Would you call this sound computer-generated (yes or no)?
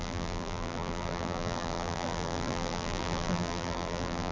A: yes